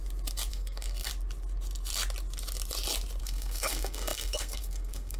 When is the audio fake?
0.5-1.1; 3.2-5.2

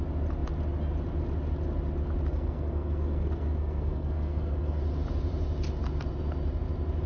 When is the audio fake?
2.3-4.8

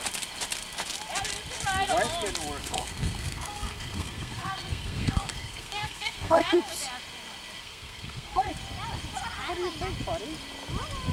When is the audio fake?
2.6-6.6; 7.6-8.5

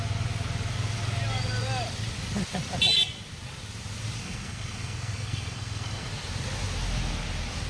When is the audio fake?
4.2-6.1

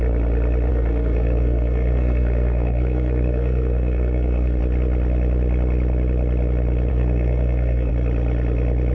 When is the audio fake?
0.7-4.6; 6.9-7.9

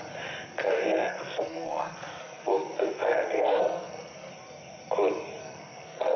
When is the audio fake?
0.6-4.3; 5.4-6.2